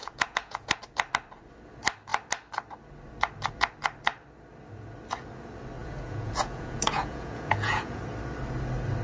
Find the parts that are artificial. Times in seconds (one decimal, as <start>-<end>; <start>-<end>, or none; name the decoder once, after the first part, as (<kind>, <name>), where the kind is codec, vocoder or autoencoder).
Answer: 0.0-0.8 (vocoder, Vocos); 5.8-8.0